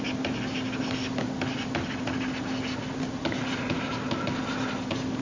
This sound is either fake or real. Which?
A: real